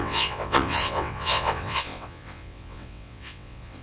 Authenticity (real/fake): fake